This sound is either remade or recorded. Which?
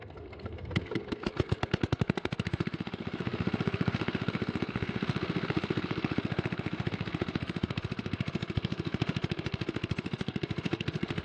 remade